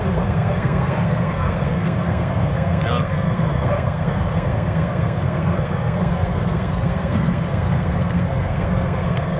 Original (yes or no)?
no